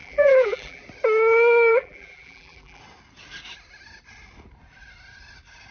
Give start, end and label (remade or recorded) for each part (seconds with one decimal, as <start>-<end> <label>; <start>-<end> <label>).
0.0-0.8 remade; 0.8-1.7 recorded; 1.7-2.8 remade; 2.8-5.7 recorded